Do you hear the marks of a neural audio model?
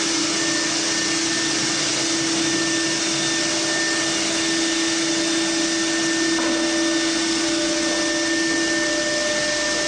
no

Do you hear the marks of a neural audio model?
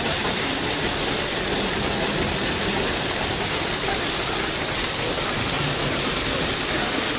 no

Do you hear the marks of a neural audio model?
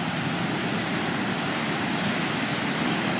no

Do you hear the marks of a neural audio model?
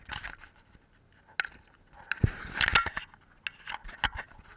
no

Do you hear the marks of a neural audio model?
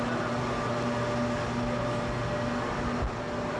no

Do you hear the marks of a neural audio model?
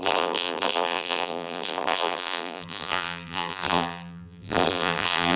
yes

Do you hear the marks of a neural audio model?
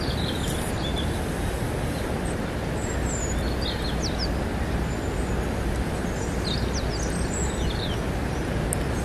no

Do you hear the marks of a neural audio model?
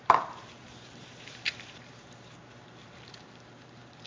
yes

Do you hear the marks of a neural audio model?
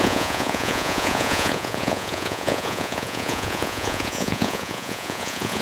yes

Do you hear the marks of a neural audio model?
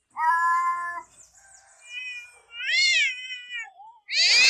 no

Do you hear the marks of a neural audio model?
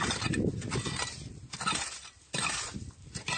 no